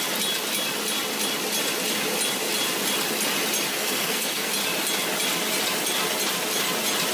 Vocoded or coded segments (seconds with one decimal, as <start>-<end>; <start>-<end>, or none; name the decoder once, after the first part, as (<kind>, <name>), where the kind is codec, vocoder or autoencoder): 3.7-4.5 (codec, SNAC)